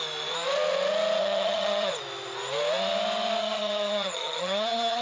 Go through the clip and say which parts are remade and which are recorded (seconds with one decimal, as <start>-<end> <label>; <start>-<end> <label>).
0.0-1.2 recorded; 1.2-1.9 remade; 1.9-3.4 recorded; 3.4-5.0 remade